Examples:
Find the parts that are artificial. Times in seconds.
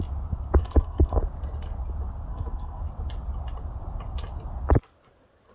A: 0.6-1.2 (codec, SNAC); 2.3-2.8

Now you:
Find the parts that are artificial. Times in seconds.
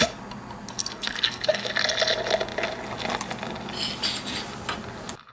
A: 0.8-1.7 (codec, SNAC)